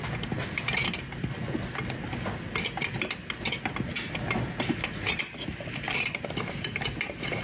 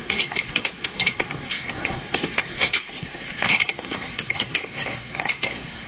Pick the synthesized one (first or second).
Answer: second